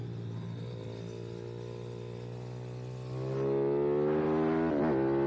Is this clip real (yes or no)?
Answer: yes